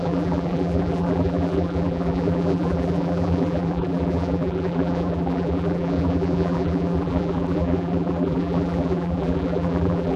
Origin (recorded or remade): remade